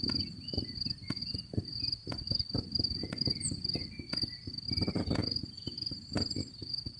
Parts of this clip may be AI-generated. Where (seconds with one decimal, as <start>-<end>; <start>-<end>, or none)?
0.0-7.0